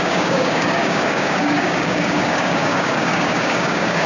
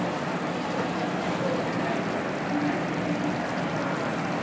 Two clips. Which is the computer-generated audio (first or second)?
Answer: first